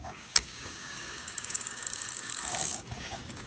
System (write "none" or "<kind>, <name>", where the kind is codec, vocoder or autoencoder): codec, DAC